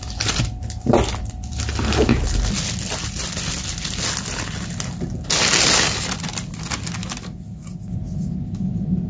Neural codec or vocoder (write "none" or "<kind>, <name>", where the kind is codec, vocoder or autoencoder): none